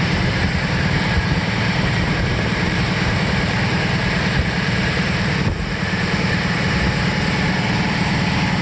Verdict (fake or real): fake